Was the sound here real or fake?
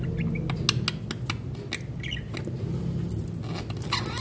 real